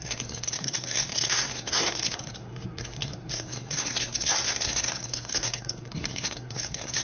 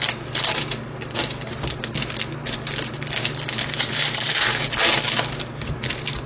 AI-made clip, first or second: first